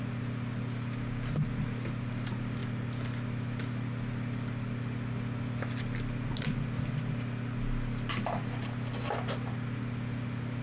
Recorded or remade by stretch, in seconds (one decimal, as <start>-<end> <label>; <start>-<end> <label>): 0.0-10.6 recorded

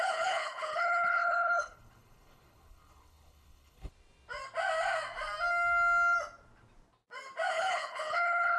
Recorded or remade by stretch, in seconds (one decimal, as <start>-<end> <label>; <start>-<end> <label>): 0.0-3.9 remade; 3.9-7.5 recorded; 7.5-8.6 remade

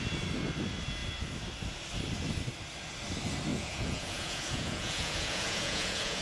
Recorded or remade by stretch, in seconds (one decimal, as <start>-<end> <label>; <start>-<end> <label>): 0.0-3.5 recorded; 3.5-6.2 remade

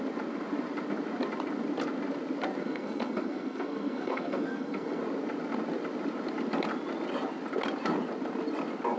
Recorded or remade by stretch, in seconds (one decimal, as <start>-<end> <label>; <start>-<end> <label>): 0.0-2.6 recorded; 2.6-5.0 remade; 5.0-9.0 recorded

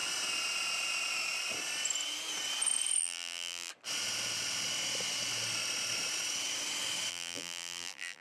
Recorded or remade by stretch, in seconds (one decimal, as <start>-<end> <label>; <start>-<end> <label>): 0.0-3.0 recorded; 3.0-3.7 remade; 3.7-7.1 recorded; 7.1-8.2 remade

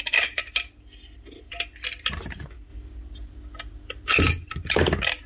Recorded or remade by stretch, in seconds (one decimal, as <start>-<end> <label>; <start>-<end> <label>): 0.0-5.3 recorded

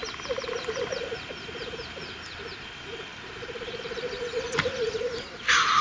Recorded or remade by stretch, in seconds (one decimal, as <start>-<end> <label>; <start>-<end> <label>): 0.0-5.8 recorded